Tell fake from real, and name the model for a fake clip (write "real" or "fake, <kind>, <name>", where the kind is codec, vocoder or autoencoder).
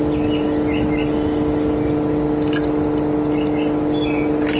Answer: real